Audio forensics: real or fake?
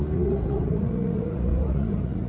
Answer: fake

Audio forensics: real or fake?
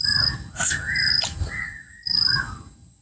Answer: real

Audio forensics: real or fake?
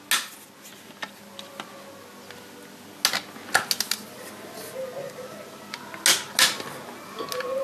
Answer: real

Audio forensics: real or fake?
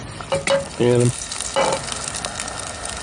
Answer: real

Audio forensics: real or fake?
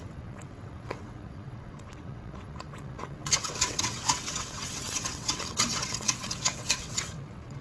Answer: fake